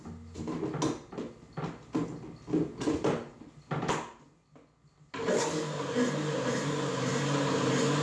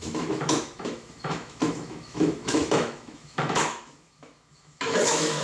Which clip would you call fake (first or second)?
second